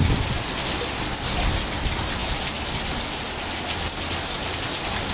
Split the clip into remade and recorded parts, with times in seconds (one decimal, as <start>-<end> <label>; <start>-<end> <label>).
0.0-5.1 recorded